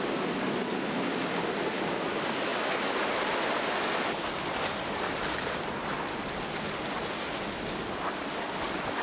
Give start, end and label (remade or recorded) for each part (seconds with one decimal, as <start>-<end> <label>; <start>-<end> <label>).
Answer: 0.0-9.0 recorded